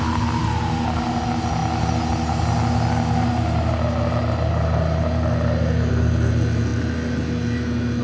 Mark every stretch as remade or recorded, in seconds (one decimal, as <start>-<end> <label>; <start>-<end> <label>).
0.0-8.0 recorded